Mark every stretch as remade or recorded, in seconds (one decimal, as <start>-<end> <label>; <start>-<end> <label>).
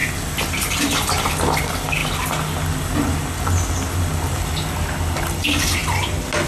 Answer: 0.0-6.5 recorded